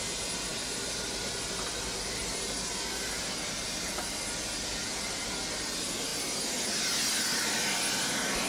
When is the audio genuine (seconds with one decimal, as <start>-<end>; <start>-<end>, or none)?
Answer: 0.0-8.5